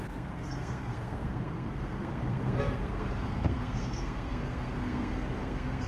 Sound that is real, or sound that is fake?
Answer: fake